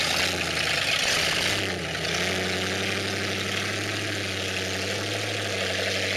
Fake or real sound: real